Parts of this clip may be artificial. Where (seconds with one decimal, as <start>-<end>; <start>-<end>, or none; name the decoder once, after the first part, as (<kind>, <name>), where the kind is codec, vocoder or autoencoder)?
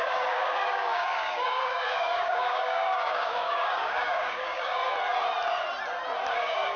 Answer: 0.0-4.8 (codec, DAC); 6.3-6.8